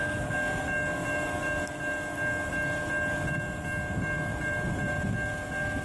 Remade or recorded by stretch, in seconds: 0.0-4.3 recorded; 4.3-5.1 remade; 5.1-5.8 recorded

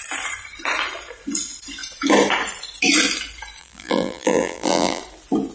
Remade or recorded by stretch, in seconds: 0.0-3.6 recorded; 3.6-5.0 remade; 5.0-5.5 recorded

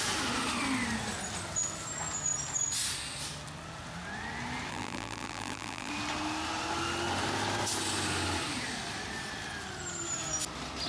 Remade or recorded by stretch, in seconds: 0.0-4.7 recorded; 4.7-5.9 remade; 5.9-10.9 recorded